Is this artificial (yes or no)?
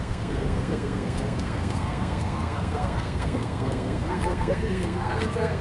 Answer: yes